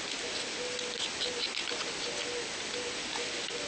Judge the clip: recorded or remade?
recorded